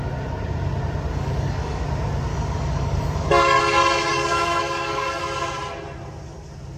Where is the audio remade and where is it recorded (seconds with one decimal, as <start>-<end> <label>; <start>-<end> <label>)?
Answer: 0.0-1.1 recorded; 1.1-1.8 remade; 1.8-2.3 recorded; 2.3-3.6 remade; 3.6-4.1 recorded; 4.1-5.2 remade; 5.2-6.8 recorded